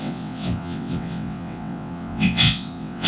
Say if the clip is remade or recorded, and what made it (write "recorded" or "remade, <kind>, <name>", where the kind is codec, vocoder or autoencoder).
remade, vocoder, WaveNeXt